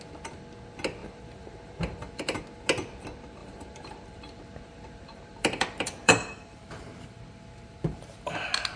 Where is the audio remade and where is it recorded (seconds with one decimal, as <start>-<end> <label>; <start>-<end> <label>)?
0.0-1.0 recorded; 1.0-2.4 remade; 2.4-3.4 recorded; 3.4-8.3 remade; 8.3-8.8 recorded